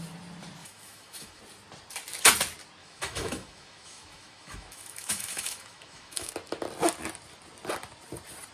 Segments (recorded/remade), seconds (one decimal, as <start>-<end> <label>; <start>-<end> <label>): 0.0-0.6 recorded; 0.6-1.4 remade; 1.4-2.8 recorded; 2.8-6.3 remade; 6.3-8.5 recorded